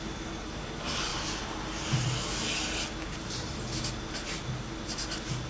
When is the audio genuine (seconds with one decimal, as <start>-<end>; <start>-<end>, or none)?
0.0-5.5